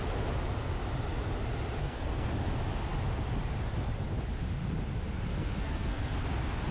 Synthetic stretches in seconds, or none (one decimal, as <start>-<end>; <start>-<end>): 1.8-2.3; 5.3-6.1